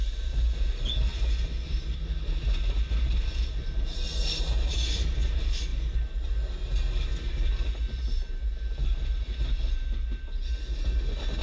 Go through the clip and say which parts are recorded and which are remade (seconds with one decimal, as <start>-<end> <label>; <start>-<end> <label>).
0.0-11.4 recorded